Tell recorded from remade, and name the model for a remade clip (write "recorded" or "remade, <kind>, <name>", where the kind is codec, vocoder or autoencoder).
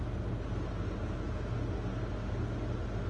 recorded